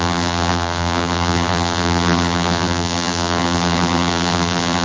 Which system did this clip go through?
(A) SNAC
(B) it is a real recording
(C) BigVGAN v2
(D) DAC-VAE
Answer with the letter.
C